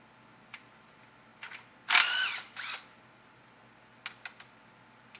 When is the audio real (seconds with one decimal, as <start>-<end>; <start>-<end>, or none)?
0.0-5.2